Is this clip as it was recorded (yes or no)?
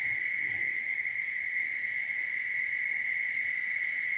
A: no